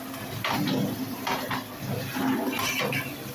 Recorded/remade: recorded